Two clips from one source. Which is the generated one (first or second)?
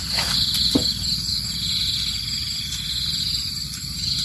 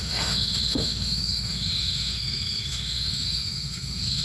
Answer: second